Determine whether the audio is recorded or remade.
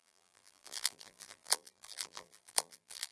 remade